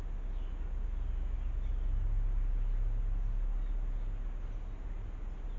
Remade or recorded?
recorded